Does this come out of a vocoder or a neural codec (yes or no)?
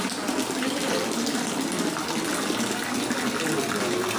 no